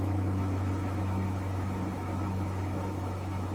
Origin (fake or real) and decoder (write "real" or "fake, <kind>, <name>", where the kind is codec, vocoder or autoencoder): fake, autoencoder, DAC-VAE